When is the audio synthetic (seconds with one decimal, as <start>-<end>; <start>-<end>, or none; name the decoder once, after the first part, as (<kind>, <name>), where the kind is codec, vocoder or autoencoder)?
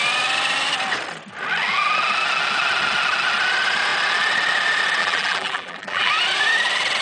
5.0-6.1 (vocoder, BigVGAN v2)